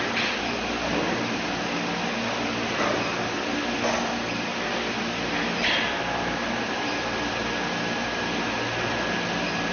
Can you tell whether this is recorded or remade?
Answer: recorded